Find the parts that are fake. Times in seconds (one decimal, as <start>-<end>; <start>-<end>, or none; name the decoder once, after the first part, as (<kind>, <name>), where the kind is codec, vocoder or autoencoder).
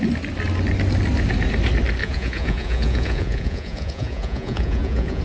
2.0-5.2 (vocoder, Vocos)